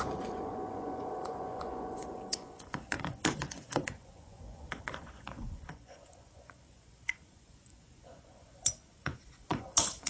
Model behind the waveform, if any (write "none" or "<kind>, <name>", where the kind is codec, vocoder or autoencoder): vocoder, Vocos